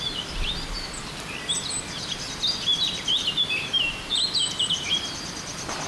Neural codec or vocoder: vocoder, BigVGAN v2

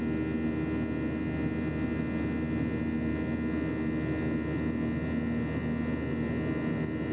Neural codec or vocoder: none